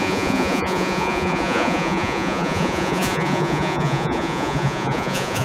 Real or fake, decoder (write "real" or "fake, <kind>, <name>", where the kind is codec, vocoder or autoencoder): fake, vocoder, Vocos